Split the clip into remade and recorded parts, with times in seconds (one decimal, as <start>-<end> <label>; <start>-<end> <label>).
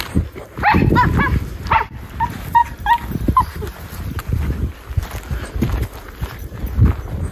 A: 0.0-7.3 recorded